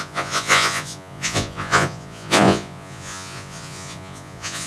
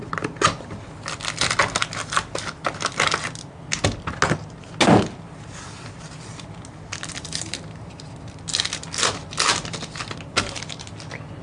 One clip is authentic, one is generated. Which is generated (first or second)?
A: first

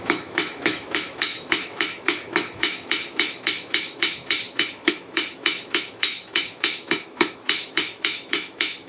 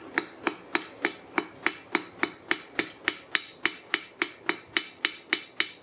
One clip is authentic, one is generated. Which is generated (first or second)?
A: first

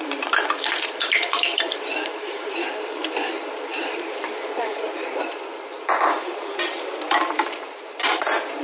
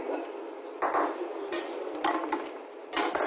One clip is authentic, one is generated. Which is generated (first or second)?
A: first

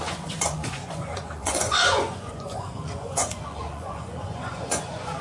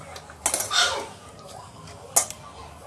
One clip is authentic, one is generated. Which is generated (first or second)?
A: first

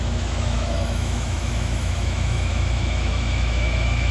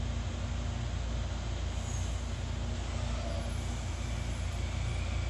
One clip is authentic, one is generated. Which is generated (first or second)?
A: first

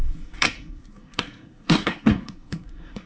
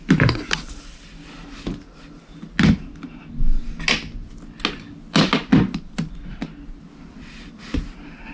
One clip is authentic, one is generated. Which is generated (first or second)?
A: first